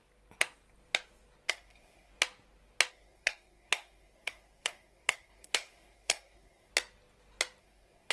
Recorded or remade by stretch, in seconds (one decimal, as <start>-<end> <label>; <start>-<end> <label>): 0.0-1.5 recorded; 1.5-2.1 remade; 2.1-2.9 recorded; 2.9-6.7 remade; 6.7-7.6 recorded; 7.6-8.1 remade